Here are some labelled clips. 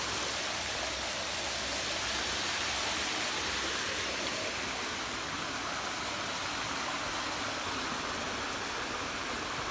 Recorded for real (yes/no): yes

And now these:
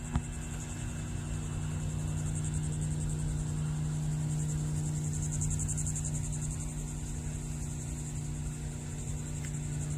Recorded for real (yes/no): yes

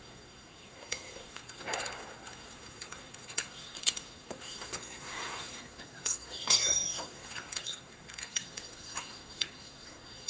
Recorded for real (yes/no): no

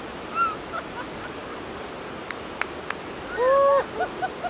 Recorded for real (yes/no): yes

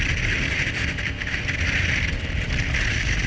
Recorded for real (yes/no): yes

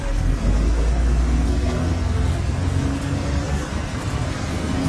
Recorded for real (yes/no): no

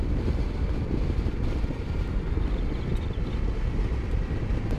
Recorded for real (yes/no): yes